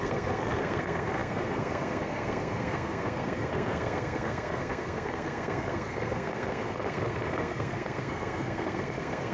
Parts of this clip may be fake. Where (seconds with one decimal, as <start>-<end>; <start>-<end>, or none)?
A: 0.0-9.3

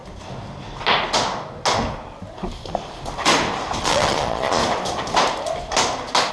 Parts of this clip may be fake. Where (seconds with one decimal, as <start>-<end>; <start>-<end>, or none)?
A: 3.8-4.6